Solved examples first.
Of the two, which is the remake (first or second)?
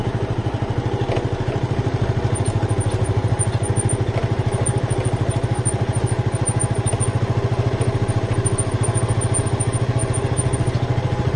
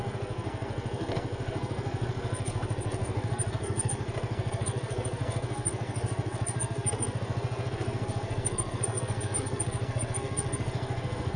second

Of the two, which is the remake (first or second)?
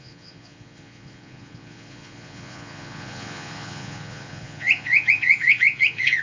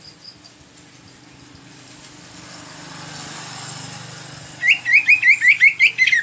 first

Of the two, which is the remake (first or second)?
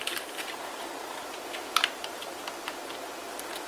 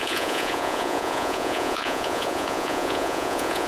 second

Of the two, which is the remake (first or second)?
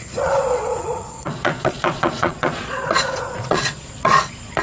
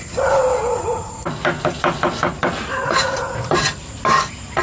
first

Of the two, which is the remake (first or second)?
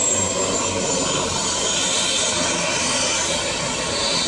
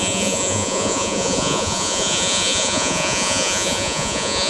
second